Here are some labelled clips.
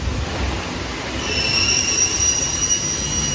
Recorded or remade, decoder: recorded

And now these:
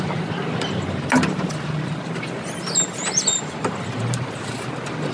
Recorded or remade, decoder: recorded